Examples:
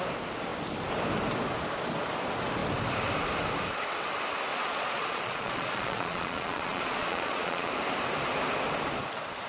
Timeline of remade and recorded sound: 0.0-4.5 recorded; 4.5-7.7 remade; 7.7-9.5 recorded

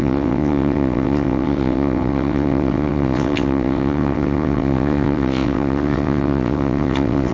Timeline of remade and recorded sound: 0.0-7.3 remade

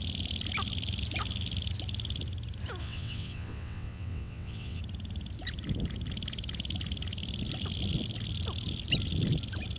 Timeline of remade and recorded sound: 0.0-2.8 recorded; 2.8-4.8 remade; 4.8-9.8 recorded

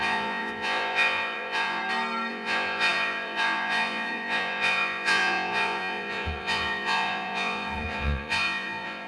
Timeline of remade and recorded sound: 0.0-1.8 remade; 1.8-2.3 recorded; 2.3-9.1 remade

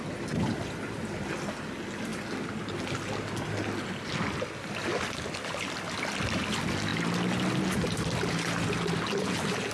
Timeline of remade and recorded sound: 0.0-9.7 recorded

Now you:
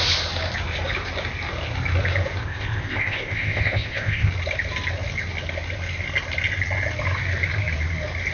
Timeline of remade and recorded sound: 0.0-2.4 recorded; 2.4-4.3 remade; 4.3-8.3 recorded

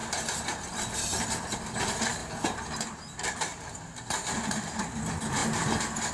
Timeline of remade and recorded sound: 0.0-1.8 recorded; 1.8-5.4 remade; 5.4-6.1 recorded